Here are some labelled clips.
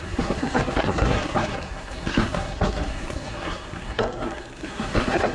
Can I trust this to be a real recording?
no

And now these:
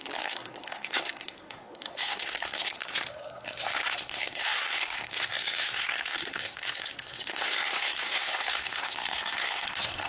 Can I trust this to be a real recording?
no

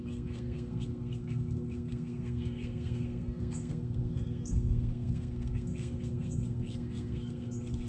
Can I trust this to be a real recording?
no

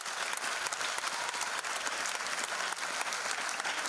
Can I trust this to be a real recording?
yes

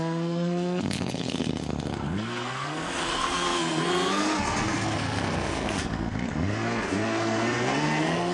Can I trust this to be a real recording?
no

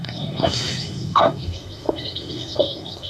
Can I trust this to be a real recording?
no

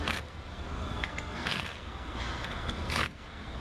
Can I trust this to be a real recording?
no